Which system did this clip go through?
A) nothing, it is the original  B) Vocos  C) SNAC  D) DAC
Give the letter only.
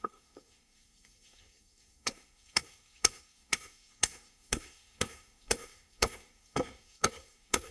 C